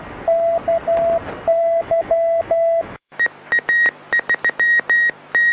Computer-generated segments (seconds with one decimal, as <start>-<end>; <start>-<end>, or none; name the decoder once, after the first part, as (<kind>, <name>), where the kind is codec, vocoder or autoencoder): 1.6-3.2 (autoencoder, DAC-VAE)